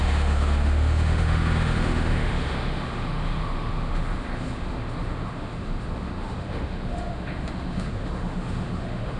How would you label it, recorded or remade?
remade